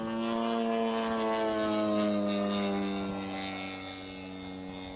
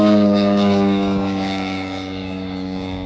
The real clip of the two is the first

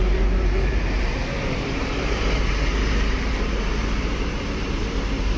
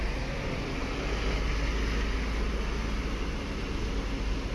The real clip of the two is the second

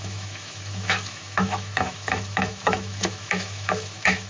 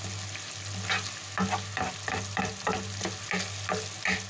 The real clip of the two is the second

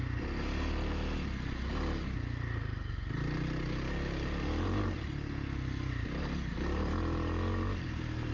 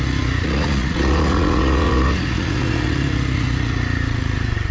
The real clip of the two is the first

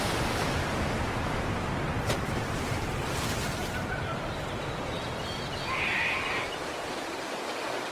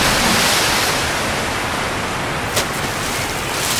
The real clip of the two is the second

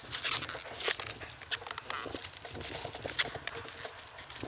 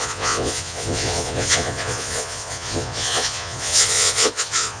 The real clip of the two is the first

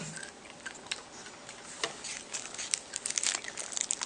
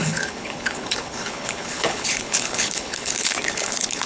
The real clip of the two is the first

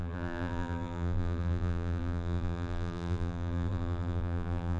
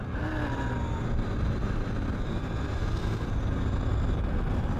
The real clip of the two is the second